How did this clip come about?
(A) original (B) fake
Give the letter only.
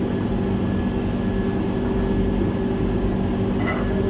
A